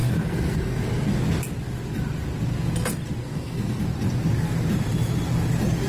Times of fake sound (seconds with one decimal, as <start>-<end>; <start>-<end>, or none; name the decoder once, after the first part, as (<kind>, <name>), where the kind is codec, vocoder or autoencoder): 0.0-1.2 (codec, SNAC); 3.2-3.8